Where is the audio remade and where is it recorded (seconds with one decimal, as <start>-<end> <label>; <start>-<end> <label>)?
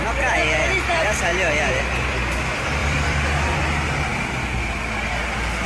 0.0-2.8 recorded; 2.8-3.6 remade; 3.6-5.7 recorded